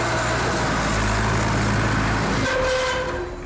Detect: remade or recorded recorded